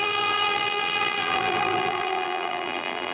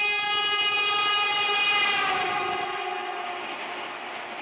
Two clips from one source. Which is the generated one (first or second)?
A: first